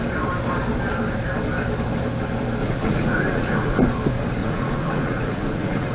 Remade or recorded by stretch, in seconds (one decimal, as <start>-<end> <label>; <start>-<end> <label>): 0.0-2.6 recorded; 2.6-3.8 remade; 3.8-4.4 recorded; 4.4-5.9 remade